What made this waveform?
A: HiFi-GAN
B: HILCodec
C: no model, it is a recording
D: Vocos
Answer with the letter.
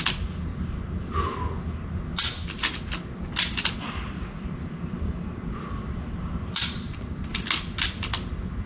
C